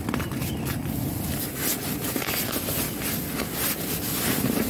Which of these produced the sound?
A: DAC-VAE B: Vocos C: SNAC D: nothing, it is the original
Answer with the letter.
D